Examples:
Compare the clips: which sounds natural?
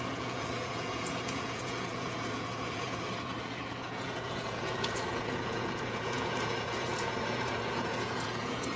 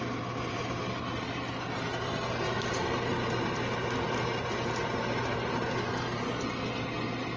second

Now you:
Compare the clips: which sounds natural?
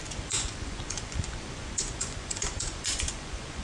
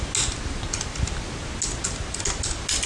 second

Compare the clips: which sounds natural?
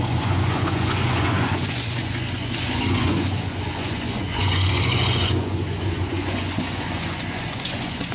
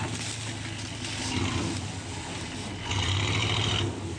second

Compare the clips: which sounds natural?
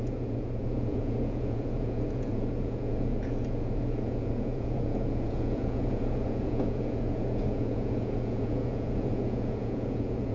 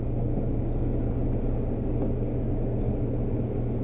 second